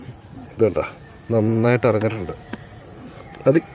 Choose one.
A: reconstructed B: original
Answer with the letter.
A